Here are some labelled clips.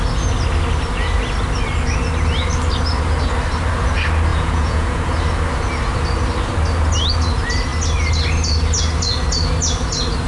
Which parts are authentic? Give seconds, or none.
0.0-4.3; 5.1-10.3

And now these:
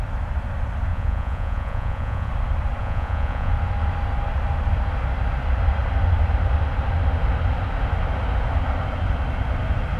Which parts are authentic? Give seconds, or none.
0.0-0.9; 2.3-2.8; 3.5-10.0